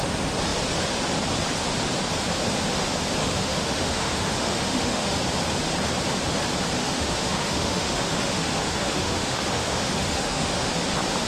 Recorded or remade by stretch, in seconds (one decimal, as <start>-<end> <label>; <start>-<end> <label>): 0.0-3.2 recorded; 3.2-5.2 remade; 5.2-6.8 recorded; 6.8-10.7 remade; 10.7-11.3 recorded